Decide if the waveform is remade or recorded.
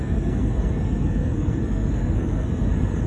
remade